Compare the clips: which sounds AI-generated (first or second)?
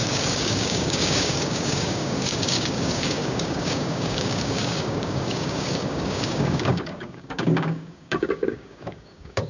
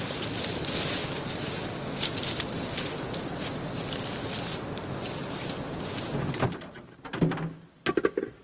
first